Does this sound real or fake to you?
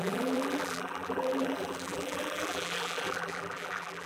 fake